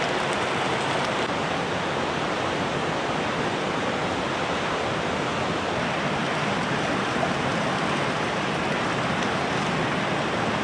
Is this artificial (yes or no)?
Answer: no